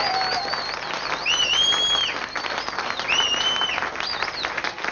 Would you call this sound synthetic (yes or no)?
no